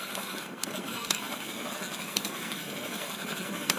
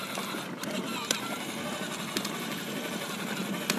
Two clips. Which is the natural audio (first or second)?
second